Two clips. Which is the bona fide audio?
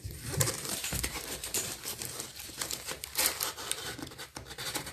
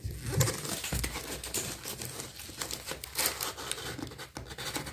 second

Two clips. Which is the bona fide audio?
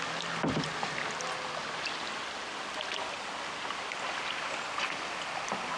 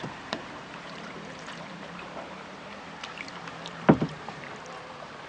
first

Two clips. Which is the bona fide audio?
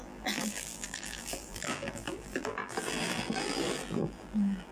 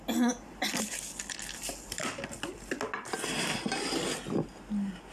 second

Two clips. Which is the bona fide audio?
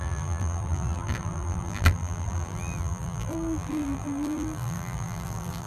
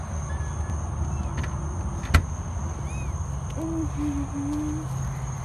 second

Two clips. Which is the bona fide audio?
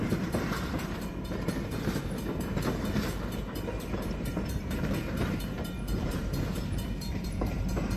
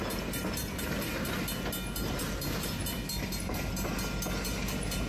second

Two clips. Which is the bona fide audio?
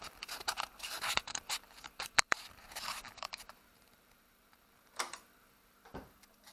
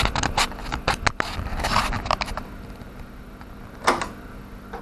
second